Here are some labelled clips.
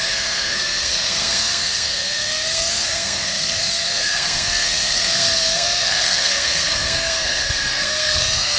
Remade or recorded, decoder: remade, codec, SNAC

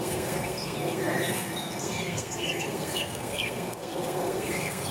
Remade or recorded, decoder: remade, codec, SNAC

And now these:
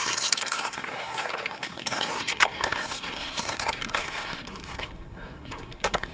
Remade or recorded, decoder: remade, codec, SNAC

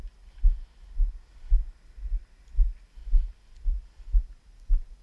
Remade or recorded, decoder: recorded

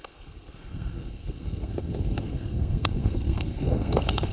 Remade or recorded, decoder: remade, codec, SNAC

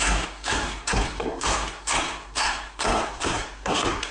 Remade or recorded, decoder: remade, codec, SNAC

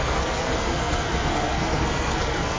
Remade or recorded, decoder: remade, codec, SNAC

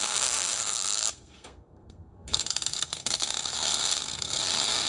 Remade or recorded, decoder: remade, codec, SNAC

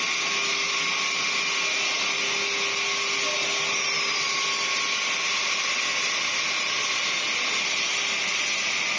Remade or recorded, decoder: recorded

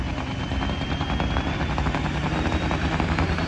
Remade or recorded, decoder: recorded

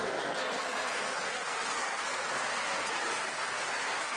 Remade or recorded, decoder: remade, codec, SNAC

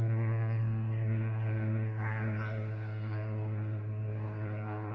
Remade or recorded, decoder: remade, codec, SNAC